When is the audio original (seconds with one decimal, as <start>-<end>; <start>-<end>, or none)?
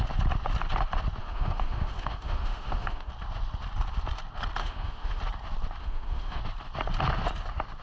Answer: 0.0-1.2; 3.1-4.6; 5.2-5.8; 6.4-7.8